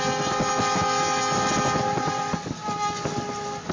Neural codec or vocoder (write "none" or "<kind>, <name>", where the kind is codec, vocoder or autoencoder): none